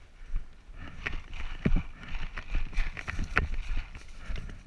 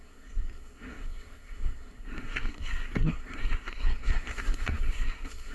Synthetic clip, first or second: second